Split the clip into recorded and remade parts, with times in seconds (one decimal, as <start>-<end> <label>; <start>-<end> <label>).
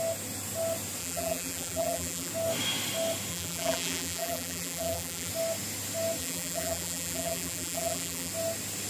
0.0-1.0 recorded; 1.0-2.3 remade; 2.3-3.3 recorded; 3.3-5.3 remade; 5.3-6.2 recorded; 6.2-8.3 remade; 8.3-8.9 recorded